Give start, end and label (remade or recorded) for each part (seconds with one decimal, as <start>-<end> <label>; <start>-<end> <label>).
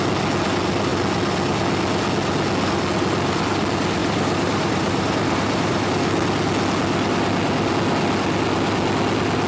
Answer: 0.0-4.0 recorded; 4.0-5.9 remade; 5.9-9.5 recorded